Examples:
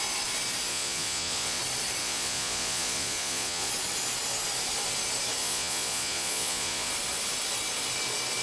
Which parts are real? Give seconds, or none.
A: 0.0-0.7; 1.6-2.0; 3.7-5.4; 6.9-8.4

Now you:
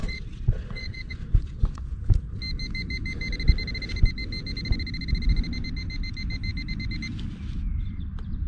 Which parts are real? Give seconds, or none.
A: 1.8-8.5

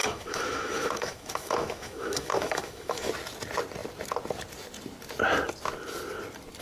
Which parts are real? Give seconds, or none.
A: 3.1-6.6

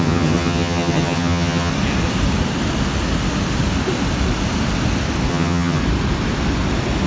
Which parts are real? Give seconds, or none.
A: 1.7-5.3; 5.8-7.1